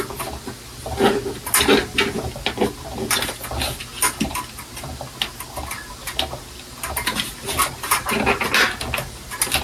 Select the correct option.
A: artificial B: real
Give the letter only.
B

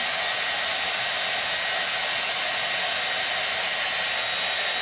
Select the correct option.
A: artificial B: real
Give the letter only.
B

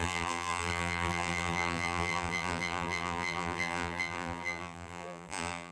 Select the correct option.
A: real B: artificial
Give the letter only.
B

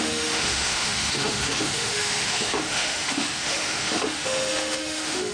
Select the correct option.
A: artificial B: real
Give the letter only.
A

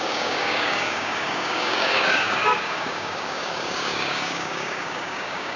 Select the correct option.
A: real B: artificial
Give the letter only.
B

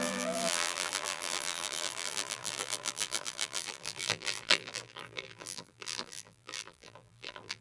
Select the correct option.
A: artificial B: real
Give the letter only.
A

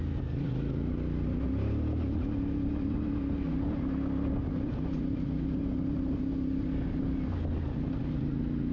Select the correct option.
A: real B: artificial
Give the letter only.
A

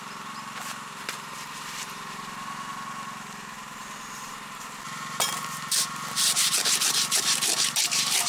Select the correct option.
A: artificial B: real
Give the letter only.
A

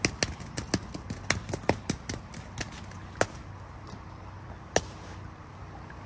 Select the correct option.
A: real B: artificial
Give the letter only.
A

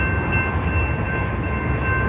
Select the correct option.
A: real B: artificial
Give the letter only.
A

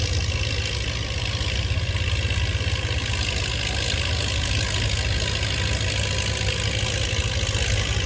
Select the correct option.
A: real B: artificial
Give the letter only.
A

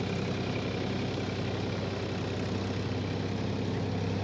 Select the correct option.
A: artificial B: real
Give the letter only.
B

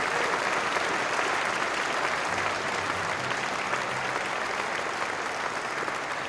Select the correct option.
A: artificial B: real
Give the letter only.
B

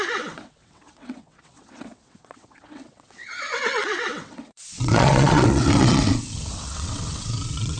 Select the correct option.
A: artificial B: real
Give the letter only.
A